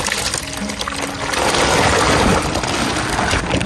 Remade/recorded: recorded